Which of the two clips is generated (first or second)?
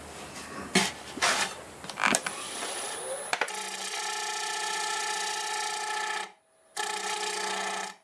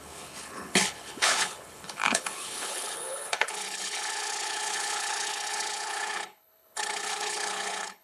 second